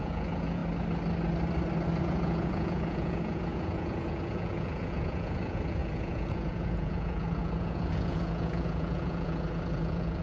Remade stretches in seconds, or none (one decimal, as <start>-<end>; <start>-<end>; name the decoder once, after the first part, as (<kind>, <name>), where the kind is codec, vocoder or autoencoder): 0.0-0.6 (vocoder, Vocos); 2.0-10.2

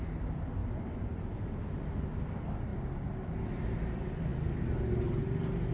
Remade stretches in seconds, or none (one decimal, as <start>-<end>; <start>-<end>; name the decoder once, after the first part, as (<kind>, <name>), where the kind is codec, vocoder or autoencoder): 0.6-1.8 (vocoder, BigVGAN v2)

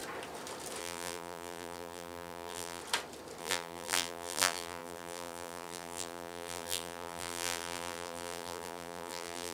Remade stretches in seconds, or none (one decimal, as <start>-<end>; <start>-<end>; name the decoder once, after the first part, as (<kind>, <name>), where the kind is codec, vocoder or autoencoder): 0.8-2.8 (vocoder, BigVGAN v2); 3.4-9.5

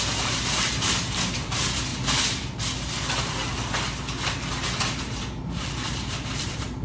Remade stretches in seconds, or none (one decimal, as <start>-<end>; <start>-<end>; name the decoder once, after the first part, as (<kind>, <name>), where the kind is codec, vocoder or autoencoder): 0.0-1.9 (vocoder, BigVGAN v2); 5.0-6.8

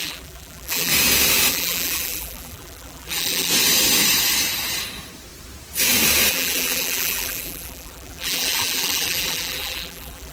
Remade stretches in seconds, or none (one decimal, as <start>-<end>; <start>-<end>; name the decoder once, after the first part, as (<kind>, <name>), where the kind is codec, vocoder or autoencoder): 0.0-0.9 (vocoder, BigVGAN v2); 1.5-3.5; 6.3-10.3